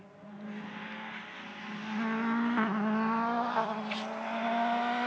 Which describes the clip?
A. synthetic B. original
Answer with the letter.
B